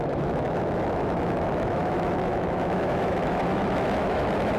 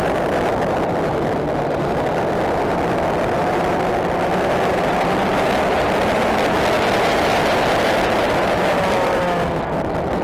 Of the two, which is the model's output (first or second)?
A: first